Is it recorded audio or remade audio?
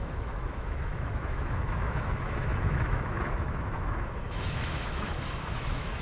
remade